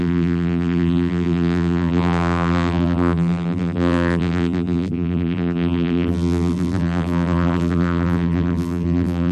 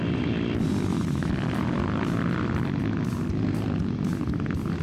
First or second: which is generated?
first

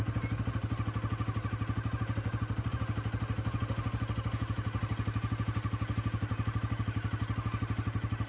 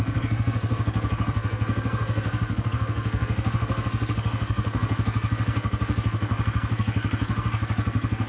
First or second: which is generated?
second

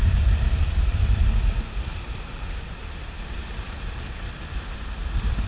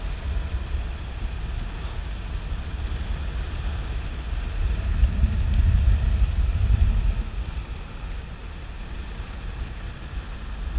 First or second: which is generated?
first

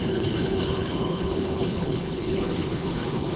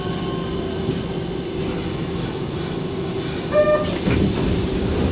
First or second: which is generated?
first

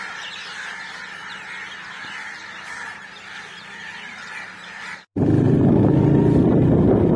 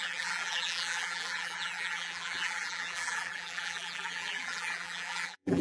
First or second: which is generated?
second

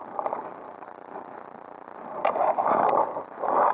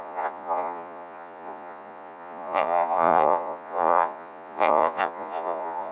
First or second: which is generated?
second